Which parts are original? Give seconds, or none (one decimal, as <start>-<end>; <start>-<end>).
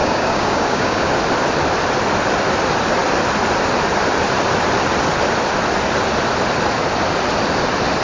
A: 1.1-8.0